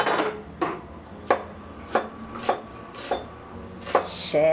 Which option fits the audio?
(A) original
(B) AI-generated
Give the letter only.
A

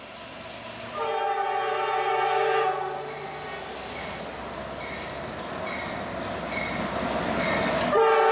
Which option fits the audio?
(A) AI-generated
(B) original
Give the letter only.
B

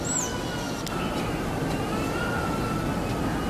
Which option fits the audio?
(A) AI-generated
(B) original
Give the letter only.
B